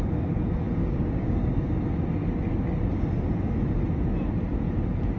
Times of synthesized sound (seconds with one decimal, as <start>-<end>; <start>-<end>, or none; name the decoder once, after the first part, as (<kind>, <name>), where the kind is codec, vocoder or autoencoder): 0.8-1.8 (codec, DAC)